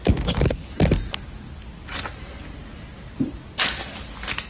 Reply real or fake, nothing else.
real